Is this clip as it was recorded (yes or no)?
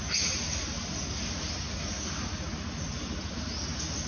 yes